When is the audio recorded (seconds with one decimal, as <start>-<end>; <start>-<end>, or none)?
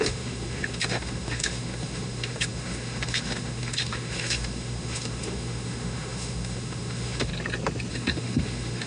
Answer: 7.3-7.9